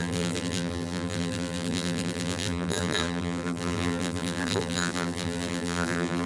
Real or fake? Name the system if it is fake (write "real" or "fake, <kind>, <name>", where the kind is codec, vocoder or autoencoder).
fake, vocoder, BigVGAN v2